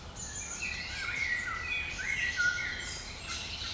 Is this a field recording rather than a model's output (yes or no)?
yes